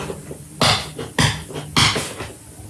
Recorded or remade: recorded